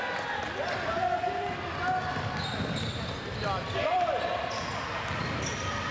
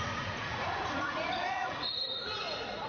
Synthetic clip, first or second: second